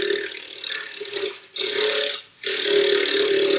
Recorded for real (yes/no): yes